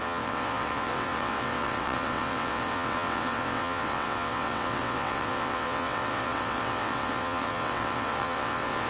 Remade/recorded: remade